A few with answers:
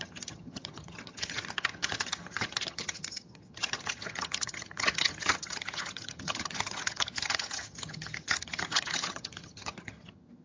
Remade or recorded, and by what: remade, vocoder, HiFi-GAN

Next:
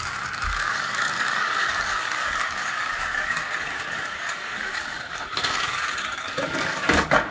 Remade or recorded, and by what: remade, codec, DAC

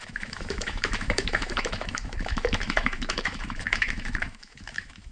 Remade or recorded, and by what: remade, autoencoder, DAC-VAE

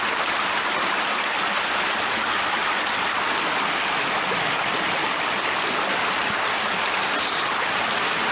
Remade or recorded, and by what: recorded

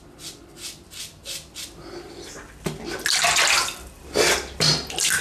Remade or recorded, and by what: recorded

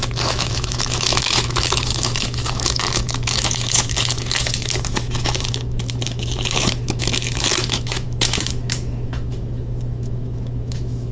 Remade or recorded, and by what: remade, autoencoder, DAC-VAE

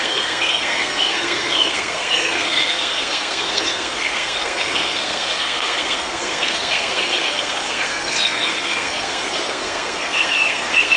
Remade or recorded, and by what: remade, codec, SNAC